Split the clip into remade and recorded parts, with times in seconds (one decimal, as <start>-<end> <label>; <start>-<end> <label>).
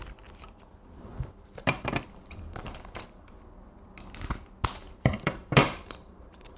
0.0-1.1 recorded; 1.1-3.4 remade; 3.4-4.8 recorded; 4.8-6.6 remade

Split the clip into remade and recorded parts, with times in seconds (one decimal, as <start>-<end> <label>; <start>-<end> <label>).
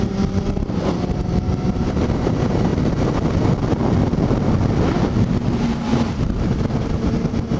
0.0-2.7 remade; 2.7-5.5 recorded; 5.5-7.6 remade